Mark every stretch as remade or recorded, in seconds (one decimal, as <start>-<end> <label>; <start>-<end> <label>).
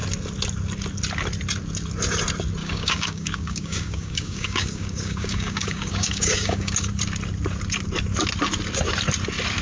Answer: 0.0-2.6 recorded; 2.6-6.9 remade; 6.9-9.6 recorded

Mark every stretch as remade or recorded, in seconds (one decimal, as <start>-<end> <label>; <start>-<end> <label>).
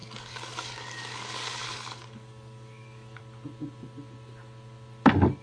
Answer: 0.0-3.2 remade; 3.2-5.4 recorded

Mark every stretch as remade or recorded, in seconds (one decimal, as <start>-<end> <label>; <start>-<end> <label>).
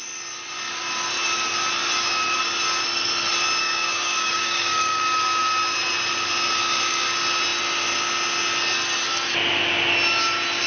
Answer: 0.0-3.6 recorded; 3.6-5.0 remade; 5.0-10.7 recorded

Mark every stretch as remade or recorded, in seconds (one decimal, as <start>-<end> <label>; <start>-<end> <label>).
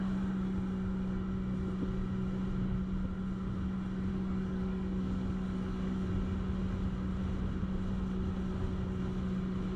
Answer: 0.0-4.1 recorded; 4.1-6.1 remade; 6.1-9.8 recorded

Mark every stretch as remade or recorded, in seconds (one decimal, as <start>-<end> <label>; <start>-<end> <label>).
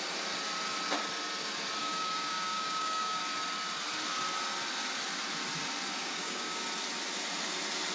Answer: 0.0-1.8 recorded; 1.8-3.2 remade; 3.2-6.0 recorded; 6.0-6.6 remade; 6.6-7.9 recorded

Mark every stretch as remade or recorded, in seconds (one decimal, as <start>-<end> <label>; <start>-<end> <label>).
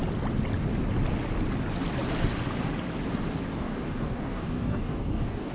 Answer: 0.0-3.5 recorded; 3.5-5.5 remade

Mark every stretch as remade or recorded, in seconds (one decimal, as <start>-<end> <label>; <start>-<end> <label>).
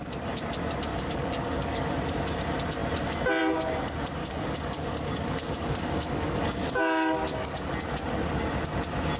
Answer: 0.0-0.9 recorded; 0.9-1.9 remade; 1.9-4.2 recorded; 4.2-7.7 remade; 7.7-9.2 recorded